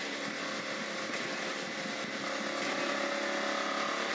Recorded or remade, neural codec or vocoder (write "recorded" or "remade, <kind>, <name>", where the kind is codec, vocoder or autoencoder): recorded